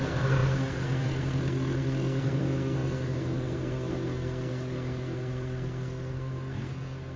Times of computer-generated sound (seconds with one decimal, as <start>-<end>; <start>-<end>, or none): 0.0-7.2